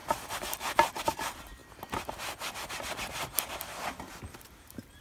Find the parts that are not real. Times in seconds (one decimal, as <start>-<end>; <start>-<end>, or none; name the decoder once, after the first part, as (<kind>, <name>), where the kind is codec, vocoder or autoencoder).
none